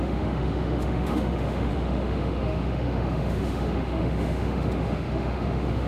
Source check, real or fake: fake